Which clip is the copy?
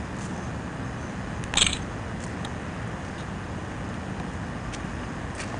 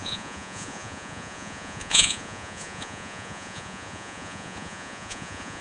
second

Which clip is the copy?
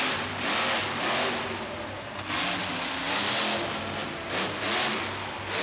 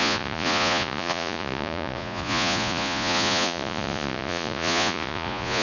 second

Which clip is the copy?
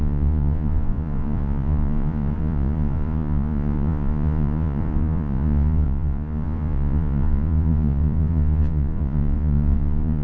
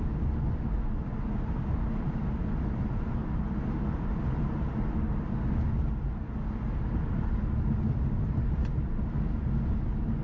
first